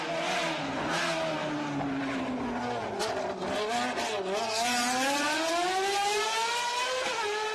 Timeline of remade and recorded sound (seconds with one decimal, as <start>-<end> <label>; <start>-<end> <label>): 0.0-1.4 recorded; 1.4-2.2 remade; 2.2-7.5 recorded